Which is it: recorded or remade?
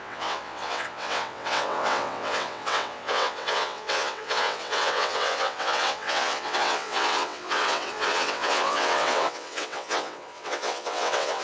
remade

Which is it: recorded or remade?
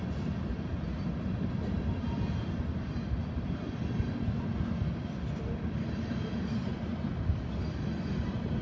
recorded